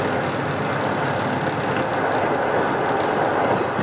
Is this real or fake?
real